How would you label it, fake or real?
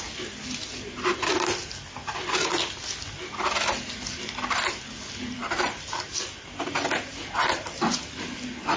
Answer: real